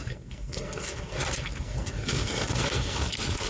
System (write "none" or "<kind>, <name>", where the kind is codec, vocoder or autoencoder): codec, SNAC